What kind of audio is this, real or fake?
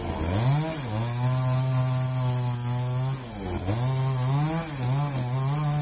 real